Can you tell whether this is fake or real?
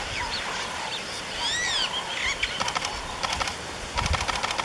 real